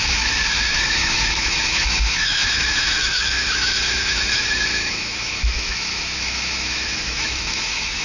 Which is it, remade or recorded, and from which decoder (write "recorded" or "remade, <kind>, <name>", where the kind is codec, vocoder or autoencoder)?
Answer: remade, autoencoder, DAC-VAE